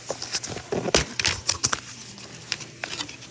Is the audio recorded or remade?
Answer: recorded